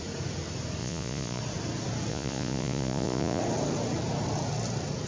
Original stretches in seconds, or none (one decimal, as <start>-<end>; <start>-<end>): 0.0-0.8; 1.4-2.1; 3.4-5.1